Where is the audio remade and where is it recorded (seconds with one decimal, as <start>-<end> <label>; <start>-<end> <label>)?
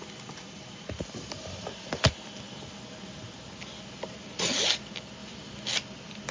0.0-5.2 recorded; 5.2-5.7 remade; 5.7-6.3 recorded